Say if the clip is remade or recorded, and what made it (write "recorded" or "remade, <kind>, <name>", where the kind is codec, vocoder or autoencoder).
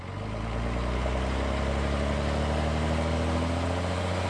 recorded